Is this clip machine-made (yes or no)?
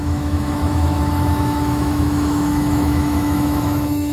yes